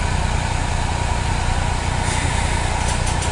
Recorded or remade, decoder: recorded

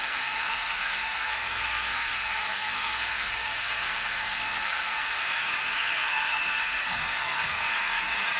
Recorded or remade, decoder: remade, codec, SNAC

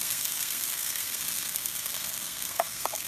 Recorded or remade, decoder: remade, codec, SNAC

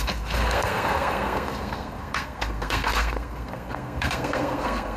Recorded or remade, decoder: remade, codec, SNAC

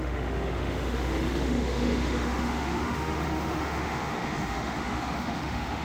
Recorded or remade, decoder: remade, autoencoder, DAC-VAE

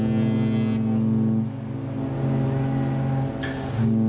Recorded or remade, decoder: recorded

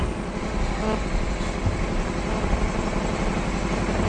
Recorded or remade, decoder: recorded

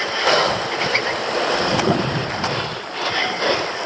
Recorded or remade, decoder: recorded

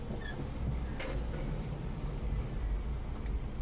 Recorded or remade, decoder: recorded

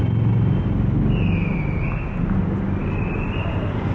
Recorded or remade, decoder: recorded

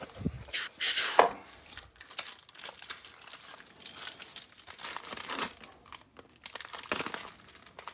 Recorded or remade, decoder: recorded